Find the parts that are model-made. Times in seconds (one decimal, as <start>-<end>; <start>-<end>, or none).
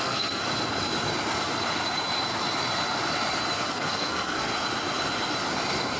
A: 0.0-0.4; 3.7-4.5